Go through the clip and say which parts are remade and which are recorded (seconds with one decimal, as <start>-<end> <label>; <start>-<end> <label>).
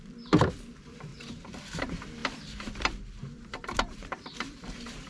0.0-1.1 remade; 1.1-1.8 recorded; 1.8-5.1 remade